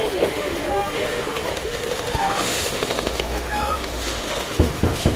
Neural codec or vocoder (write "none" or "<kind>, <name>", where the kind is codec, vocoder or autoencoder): autoencoder, DAC-VAE